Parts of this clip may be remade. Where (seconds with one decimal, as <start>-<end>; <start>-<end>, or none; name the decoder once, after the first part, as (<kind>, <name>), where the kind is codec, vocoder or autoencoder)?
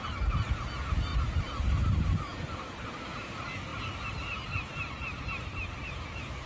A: 1.1-2.9 (vocoder, BigVGAN v2); 3.7-4.7